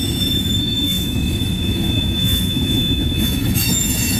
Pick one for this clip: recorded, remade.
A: remade